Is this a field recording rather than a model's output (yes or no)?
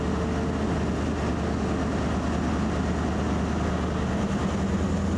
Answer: yes